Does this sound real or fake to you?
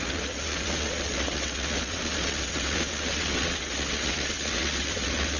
fake